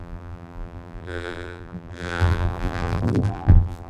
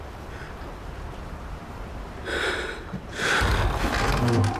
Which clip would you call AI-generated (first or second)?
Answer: first